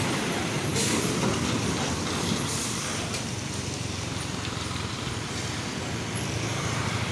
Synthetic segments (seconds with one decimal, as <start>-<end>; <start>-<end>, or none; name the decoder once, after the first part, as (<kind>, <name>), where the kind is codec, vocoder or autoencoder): 0.7-5.0 (vocoder, BigVGAN v2); 6.5-7.1